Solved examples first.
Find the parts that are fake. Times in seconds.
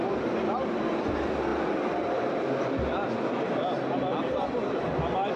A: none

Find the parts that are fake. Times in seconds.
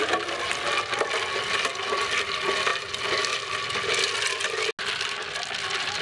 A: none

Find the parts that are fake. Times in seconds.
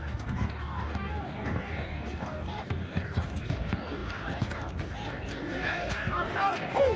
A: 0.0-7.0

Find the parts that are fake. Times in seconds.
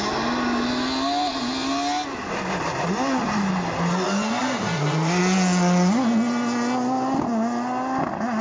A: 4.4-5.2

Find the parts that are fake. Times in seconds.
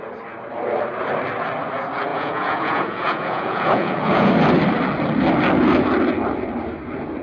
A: 2.1-4.3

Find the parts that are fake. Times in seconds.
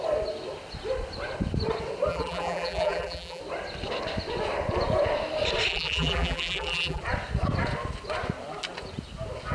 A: 2.1-3.4; 5.7-7.0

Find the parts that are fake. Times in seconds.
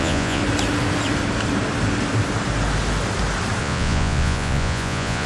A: 0.0-0.4; 3.6-5.3